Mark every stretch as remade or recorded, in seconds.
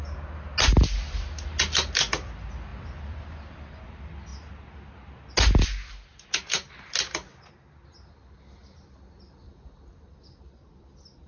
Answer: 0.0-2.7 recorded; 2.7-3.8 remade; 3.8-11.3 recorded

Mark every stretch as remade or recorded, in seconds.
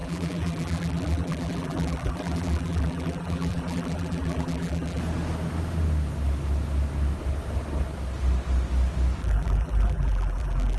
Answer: 0.0-5.0 remade; 5.0-9.2 recorded; 9.2-10.8 remade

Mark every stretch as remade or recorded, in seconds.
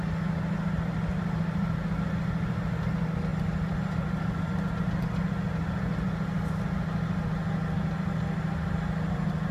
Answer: 0.0-1.1 recorded; 1.1-1.9 remade; 1.9-9.5 recorded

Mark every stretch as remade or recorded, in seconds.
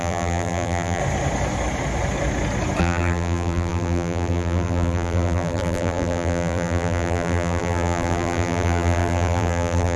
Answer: 0.0-1.0 remade; 1.0-2.8 recorded; 2.8-10.0 remade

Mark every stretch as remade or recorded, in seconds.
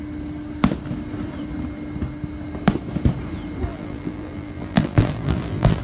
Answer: 0.0-3.7 recorded; 3.7-5.8 remade